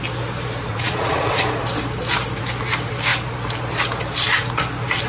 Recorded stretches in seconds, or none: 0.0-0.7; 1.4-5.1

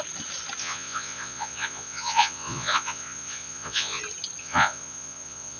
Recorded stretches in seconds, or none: 0.0-0.6; 4.0-4.4

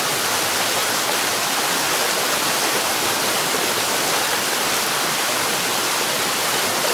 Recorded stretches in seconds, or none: 0.0-6.9

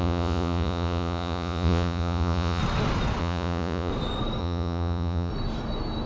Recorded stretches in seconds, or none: 2.6-3.2; 3.9-4.4; 5.3-6.1

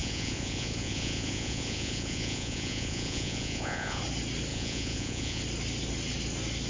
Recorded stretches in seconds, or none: 4.0-4.5; 5.4-6.7

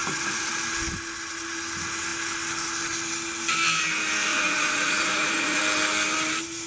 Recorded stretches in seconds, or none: 0.5-4.3; 5.6-6.7

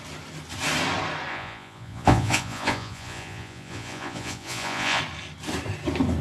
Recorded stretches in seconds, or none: 0.0-1.3; 5.0-6.2